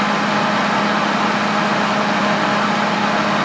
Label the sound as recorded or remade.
recorded